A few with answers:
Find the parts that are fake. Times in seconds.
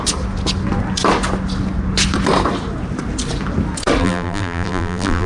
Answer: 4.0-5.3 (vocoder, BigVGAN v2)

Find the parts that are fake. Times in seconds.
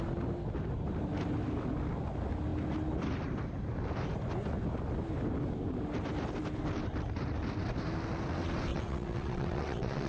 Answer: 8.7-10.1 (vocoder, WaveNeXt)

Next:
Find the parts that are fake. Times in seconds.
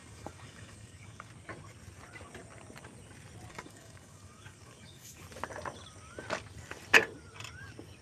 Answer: 0.0-1.3 (codec, DAC); 3.5-5.2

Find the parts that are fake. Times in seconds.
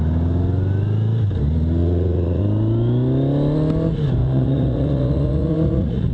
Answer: 1.8-2.4 (vocoder, Vocos); 4.2-6.1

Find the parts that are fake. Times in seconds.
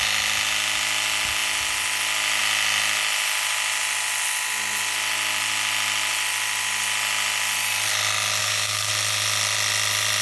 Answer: 8.4-8.9 (codec, DAC)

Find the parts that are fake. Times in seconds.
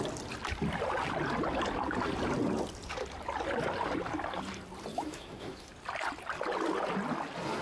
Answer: 4.9-5.7 (autoencoder, DAC-VAE)